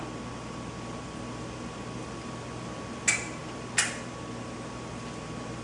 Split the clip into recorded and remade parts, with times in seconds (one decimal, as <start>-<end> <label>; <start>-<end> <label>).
0.0-5.6 recorded